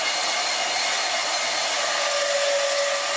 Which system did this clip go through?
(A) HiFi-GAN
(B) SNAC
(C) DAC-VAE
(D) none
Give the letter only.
D